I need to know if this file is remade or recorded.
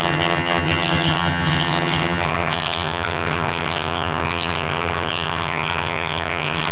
remade